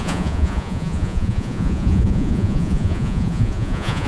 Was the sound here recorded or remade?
remade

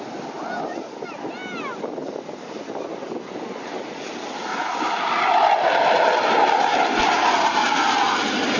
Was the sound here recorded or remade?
recorded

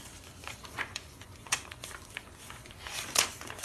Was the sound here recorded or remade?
remade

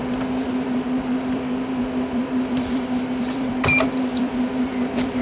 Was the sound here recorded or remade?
remade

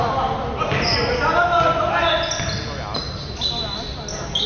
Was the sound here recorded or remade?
recorded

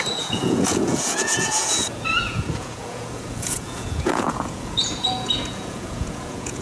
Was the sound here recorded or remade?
remade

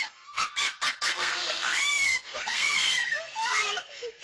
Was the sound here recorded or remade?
remade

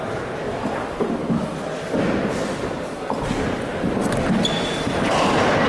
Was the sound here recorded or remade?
recorded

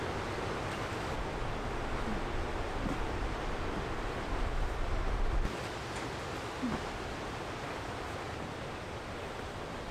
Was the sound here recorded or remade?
recorded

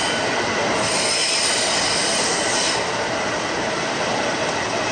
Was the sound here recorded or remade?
recorded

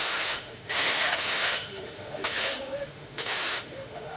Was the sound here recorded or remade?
remade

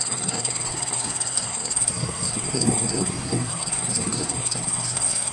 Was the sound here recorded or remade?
remade